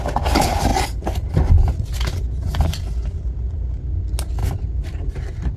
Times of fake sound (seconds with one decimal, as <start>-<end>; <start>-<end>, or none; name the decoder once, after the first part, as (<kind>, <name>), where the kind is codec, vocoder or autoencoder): none